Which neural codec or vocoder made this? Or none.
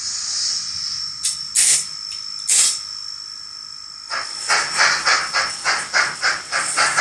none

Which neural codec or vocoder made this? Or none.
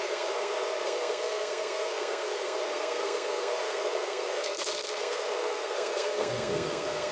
codec, SNAC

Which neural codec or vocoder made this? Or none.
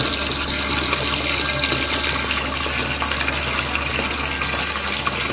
none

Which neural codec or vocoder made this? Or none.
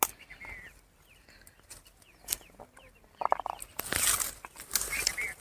none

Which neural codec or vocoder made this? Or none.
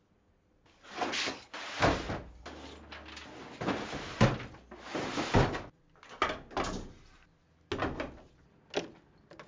none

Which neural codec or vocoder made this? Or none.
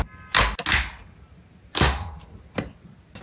none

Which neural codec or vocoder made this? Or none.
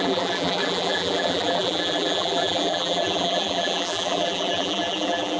vocoder, BigVGAN v2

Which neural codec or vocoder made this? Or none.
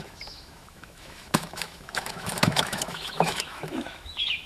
autoencoder, DAC-VAE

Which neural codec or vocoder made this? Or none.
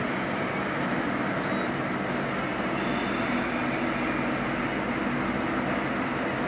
none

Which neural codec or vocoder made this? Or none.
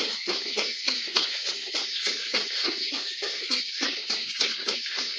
codec, SNAC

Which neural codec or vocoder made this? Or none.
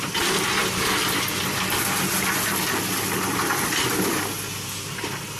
none